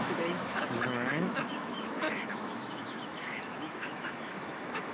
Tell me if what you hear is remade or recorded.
remade